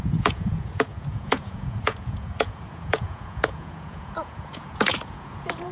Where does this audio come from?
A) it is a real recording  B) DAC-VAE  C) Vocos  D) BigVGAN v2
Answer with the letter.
C